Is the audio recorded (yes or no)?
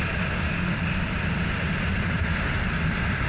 yes